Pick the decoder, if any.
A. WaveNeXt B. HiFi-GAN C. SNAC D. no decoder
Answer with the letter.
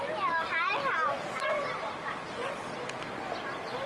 D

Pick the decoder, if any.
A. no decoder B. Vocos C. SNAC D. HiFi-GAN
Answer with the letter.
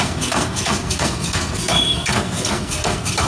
C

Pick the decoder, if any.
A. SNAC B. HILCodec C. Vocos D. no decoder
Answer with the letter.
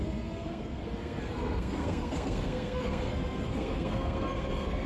A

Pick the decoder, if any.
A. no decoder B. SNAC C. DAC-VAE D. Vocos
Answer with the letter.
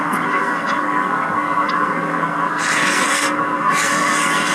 B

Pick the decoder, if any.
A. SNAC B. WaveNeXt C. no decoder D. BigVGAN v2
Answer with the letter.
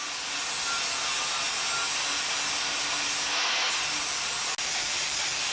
C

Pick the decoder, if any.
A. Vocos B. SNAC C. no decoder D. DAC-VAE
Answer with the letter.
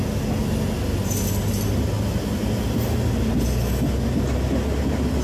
C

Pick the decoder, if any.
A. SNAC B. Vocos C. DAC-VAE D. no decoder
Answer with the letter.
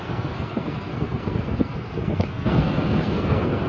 A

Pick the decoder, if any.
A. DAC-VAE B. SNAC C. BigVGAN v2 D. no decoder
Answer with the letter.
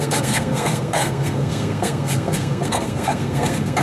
B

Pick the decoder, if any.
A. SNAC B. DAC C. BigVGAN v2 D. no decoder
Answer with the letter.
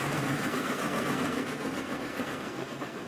A